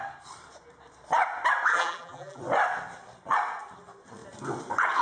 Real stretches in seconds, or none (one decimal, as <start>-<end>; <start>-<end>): 0.0-1.7; 2.4-5.0